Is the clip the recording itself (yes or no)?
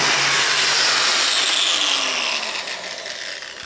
yes